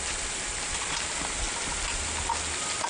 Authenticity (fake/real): real